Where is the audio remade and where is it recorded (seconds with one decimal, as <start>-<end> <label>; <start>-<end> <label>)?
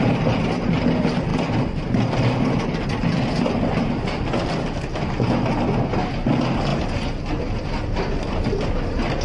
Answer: 0.0-9.2 recorded